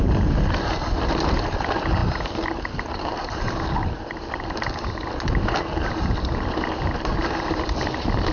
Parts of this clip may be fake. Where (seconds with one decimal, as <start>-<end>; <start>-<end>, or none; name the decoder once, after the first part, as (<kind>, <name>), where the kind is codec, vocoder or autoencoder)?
none